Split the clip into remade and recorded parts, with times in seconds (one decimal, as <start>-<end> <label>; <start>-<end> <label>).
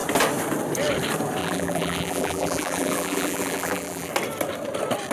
0.0-1.4 recorded; 1.4-4.1 remade; 4.1-5.1 recorded